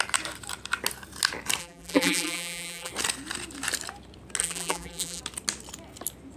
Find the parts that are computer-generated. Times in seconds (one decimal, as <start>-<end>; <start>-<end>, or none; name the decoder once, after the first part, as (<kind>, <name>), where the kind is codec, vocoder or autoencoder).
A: 1.6-2.9 (vocoder, BigVGAN v2); 4.4-5.2